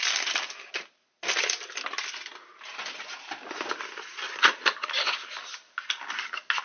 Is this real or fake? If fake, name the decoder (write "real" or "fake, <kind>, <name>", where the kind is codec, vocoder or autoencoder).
real